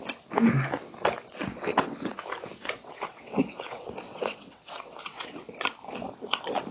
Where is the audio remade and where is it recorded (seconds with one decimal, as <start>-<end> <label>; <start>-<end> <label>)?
0.0-1.7 recorded; 1.7-2.2 remade; 2.2-2.6 recorded; 2.6-5.4 remade; 5.4-6.7 recorded

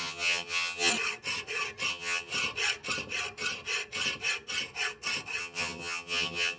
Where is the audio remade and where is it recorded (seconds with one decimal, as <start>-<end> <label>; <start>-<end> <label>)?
0.0-0.9 remade; 0.9-1.9 recorded; 1.9-2.3 remade; 2.3-5.4 recorded; 5.4-6.6 remade

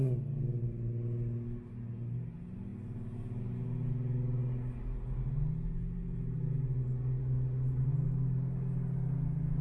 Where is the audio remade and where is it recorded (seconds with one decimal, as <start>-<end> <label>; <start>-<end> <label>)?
0.0-9.6 recorded

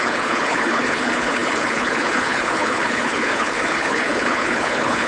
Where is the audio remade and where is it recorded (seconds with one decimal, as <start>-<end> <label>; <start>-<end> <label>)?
0.0-5.1 remade

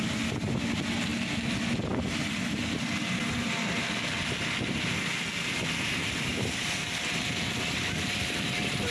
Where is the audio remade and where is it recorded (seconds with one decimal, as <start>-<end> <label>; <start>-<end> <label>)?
0.0-8.9 recorded

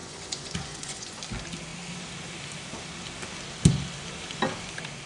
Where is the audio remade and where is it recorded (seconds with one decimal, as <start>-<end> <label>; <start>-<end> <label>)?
0.0-1.2 remade; 1.2-5.1 recorded

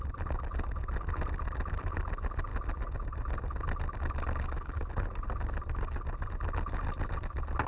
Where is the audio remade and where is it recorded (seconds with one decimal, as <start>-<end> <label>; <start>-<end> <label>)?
0.0-7.7 recorded

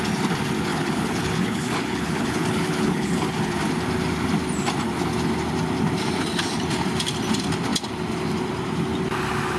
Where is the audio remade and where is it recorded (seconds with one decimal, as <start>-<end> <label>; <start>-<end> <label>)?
0.0-0.7 recorded; 0.7-3.5 remade; 3.5-9.6 recorded